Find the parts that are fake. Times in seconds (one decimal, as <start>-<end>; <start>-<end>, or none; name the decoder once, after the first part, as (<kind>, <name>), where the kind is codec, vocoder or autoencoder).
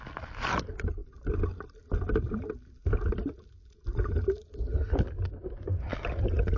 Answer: 0.0-1.0 (vocoder, BigVGAN v2); 2.4-2.8; 6.1-6.6